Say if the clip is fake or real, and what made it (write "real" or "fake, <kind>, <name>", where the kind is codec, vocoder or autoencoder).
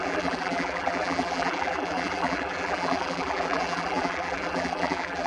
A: fake, vocoder, BigVGAN v2